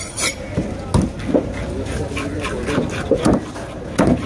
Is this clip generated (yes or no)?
no